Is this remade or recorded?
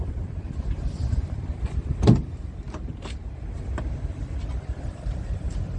recorded